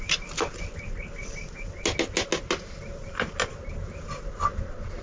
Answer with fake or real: real